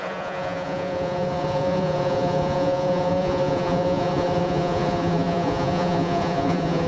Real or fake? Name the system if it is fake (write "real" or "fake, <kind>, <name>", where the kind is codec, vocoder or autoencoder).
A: fake, vocoder, Vocos